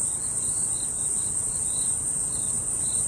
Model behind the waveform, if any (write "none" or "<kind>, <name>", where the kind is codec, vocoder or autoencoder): vocoder, BigVGAN v2